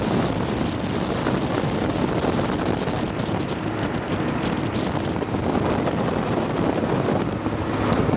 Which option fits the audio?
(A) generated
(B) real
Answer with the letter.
B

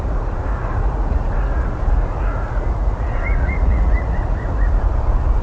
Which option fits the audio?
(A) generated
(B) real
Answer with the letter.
A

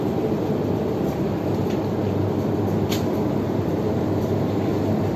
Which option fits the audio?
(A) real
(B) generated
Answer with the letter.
B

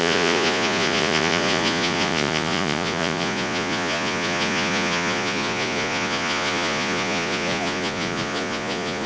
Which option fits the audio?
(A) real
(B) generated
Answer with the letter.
B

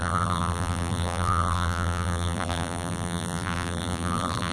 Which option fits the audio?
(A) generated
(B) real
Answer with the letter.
A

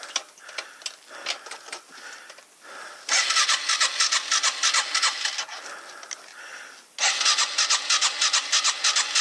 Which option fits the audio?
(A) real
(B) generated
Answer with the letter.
A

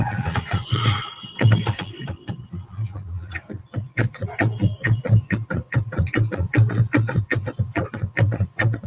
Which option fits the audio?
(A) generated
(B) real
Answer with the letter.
A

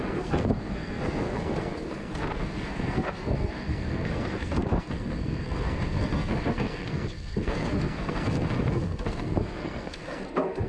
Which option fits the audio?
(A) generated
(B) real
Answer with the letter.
A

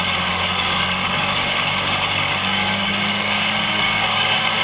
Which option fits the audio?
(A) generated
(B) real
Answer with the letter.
A